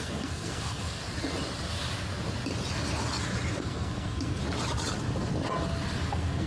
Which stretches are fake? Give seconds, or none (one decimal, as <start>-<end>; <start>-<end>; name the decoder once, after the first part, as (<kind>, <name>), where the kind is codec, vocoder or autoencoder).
0.0-1.0 (codec, SNAC); 3.6-4.4; 6.1-6.5